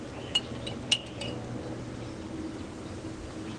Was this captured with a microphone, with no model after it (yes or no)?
yes